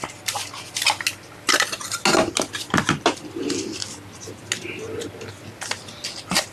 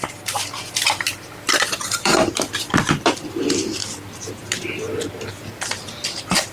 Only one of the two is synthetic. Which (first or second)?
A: second